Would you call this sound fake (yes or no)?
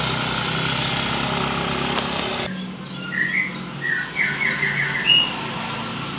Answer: no